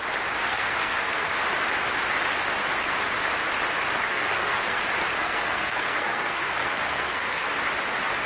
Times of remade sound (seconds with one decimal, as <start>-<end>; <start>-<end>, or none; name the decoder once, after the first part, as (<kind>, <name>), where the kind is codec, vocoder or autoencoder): 0.4-1.3 (codec, SNAC); 4.1-4.8; 5.2-7.5